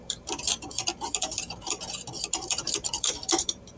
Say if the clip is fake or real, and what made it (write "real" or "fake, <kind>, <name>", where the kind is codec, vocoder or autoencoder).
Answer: fake, vocoder, BigVGAN v2